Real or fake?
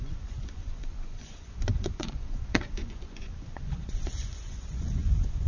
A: fake